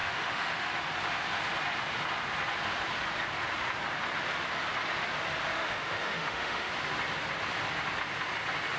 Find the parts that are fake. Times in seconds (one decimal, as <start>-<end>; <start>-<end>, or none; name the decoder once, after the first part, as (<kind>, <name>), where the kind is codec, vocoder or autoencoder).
0.0-0.7 (autoencoder, DAC-VAE); 5.5-6.7